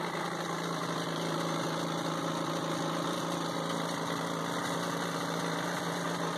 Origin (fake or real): real